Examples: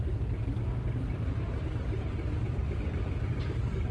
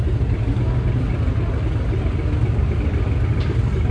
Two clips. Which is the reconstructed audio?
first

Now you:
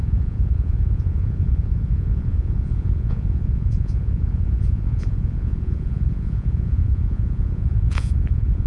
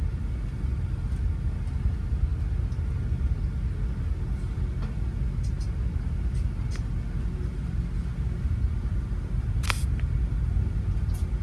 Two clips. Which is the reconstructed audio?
first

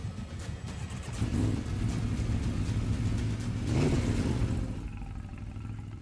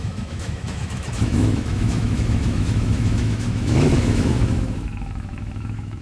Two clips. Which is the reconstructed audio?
second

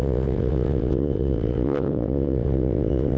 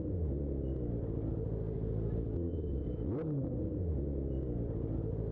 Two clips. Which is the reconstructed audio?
first